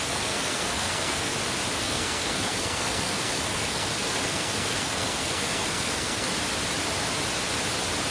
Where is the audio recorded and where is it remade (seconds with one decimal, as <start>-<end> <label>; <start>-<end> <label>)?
0.0-1.3 remade; 1.3-1.8 recorded; 1.8-6.3 remade; 6.3-8.1 recorded